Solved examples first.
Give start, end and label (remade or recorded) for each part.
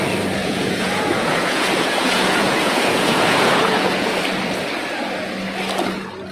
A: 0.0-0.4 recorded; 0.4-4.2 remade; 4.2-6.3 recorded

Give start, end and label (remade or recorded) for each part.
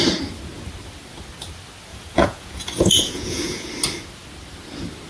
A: 0.0-1.9 recorded; 1.9-3.7 remade; 3.7-5.1 recorded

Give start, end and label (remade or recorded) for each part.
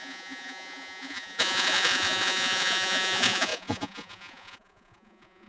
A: 0.0-5.5 remade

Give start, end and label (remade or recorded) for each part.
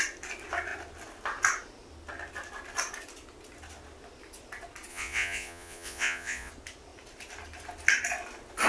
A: 0.0-4.9 recorded; 4.9-6.5 remade; 6.5-8.7 recorded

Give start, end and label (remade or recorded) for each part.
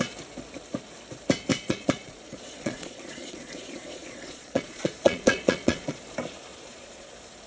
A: 0.0-1.5 recorded; 1.5-6.0 remade; 6.0-6.5 recorded; 6.5-7.1 remade; 7.1-7.5 recorded